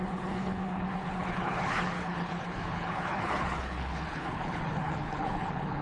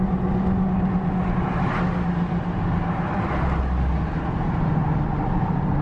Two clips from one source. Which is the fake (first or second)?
first